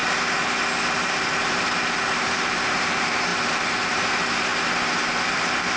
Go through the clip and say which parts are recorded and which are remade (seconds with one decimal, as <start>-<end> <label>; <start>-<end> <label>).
0.0-0.8 recorded; 0.8-4.5 remade; 4.5-5.2 recorded; 5.2-5.8 remade